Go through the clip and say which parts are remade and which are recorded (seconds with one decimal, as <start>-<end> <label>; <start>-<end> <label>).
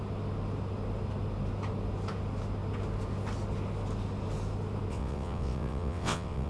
0.0-4.9 recorded; 4.9-6.5 remade